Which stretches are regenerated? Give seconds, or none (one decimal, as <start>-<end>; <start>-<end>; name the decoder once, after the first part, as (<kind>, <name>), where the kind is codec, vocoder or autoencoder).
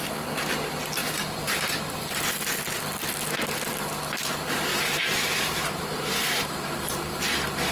1.0-2.2 (vocoder, BigVGAN v2); 4.7-7.7